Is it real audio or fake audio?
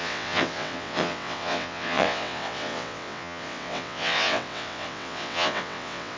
fake